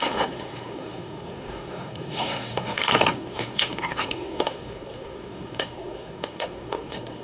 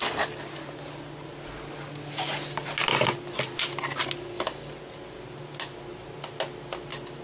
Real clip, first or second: second